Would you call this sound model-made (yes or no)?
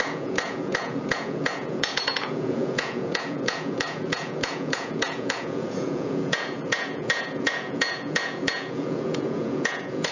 yes